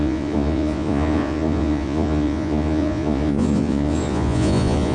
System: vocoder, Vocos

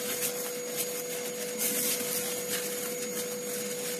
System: none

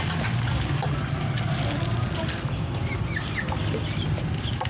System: none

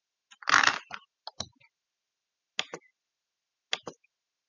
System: none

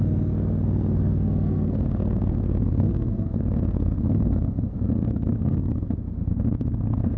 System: codec, SNAC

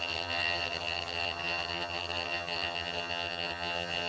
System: vocoder, HiFi-GAN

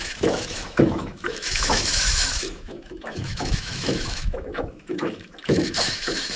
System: autoencoder, DAC-VAE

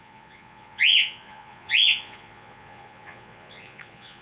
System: vocoder, Vocos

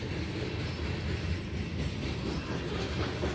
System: none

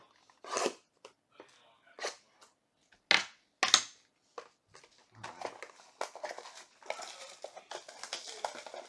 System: none